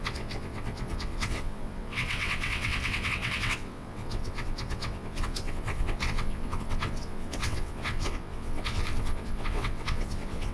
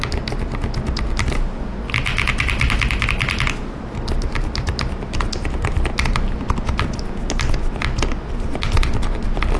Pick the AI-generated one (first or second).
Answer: first